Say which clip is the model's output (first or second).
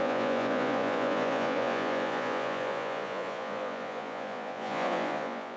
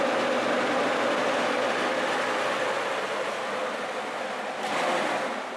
first